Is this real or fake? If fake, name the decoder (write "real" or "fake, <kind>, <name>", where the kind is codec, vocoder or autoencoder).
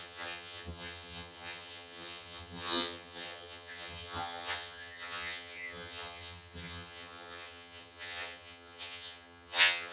fake, vocoder, HiFi-GAN